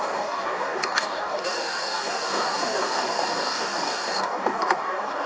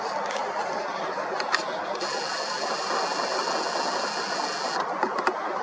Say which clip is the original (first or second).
second